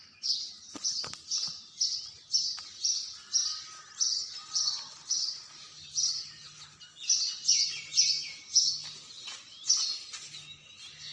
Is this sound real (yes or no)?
yes